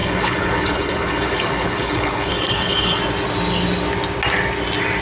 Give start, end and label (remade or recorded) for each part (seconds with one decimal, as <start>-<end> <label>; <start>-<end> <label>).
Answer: 0.0-3.0 remade; 3.0-5.0 recorded